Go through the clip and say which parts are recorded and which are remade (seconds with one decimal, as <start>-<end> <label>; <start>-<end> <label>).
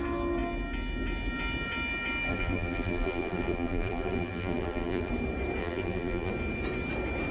0.0-2.3 recorded; 2.3-5.1 remade; 5.1-5.6 recorded; 5.6-6.3 remade; 6.3-7.3 recorded